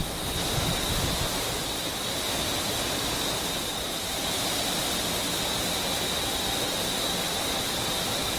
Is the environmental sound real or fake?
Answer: real